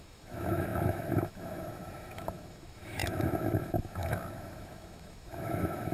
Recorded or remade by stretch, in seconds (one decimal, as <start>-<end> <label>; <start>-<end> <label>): 0.0-5.9 remade